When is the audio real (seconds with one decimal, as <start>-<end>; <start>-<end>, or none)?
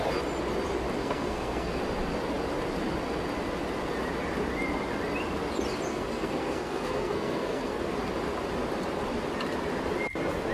0.0-1.0; 1.8-5.9; 7.8-10.5